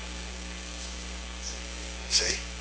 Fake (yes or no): yes